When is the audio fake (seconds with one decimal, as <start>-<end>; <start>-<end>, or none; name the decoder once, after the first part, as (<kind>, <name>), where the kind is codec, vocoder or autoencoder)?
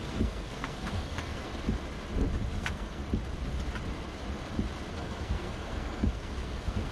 0.0-1.5 (codec, SNAC); 2.5-3.0; 4.9-6.9